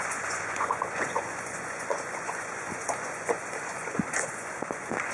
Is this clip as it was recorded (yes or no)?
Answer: no